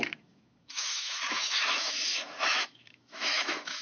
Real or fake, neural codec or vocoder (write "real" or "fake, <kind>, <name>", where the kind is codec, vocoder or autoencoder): fake, autoencoder, DAC-VAE